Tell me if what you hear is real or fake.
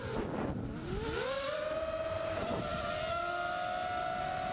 real